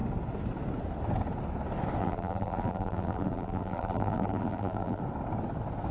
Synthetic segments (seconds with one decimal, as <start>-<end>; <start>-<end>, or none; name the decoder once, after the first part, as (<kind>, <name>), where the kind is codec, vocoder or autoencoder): 2.0-5.0 (vocoder, BigVGAN v2)